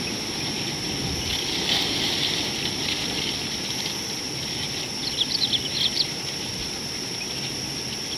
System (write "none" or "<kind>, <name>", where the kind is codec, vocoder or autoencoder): none